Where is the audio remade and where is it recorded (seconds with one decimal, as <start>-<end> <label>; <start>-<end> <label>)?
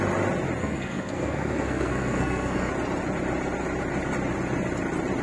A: 0.0-0.6 recorded; 0.6-2.7 remade; 2.7-5.2 recorded